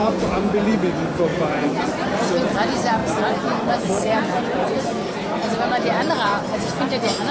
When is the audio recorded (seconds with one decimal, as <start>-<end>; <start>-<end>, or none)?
0.7-1.3; 1.8-7.3